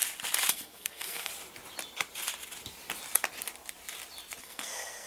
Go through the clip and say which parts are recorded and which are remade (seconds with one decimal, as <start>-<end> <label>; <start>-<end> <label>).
0.0-0.5 recorded; 0.5-1.3 remade; 1.3-4.4 recorded; 4.4-5.1 remade